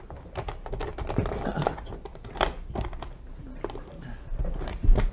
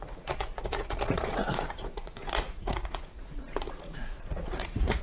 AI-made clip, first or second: second